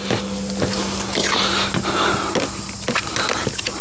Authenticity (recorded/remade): recorded